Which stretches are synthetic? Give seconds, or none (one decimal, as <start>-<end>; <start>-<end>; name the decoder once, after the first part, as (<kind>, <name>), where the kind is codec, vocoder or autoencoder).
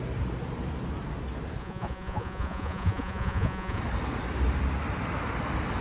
1.6-3.8 (vocoder, Vocos)